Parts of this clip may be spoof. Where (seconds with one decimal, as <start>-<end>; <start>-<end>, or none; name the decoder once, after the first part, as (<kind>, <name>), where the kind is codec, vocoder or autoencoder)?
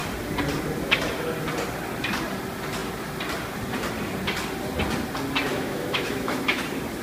5.5-6.6 (autoencoder, DAC-VAE)